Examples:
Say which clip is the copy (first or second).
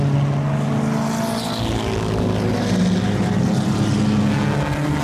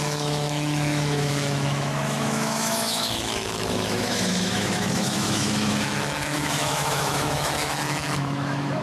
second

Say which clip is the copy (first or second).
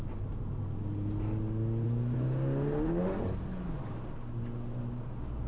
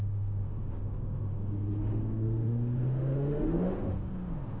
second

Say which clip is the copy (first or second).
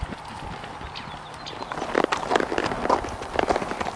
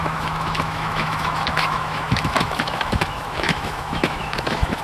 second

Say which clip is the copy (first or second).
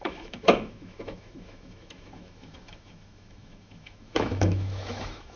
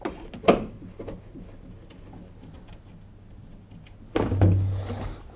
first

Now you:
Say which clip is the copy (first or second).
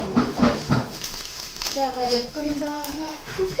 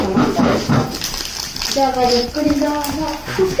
first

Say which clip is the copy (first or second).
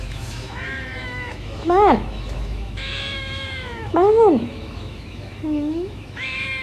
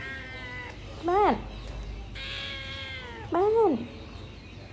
first